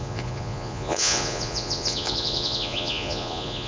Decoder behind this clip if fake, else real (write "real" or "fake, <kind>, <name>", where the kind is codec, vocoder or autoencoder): fake, vocoder, Vocos